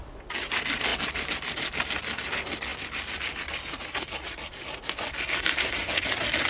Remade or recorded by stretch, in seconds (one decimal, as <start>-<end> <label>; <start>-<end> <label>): 0.0-6.5 recorded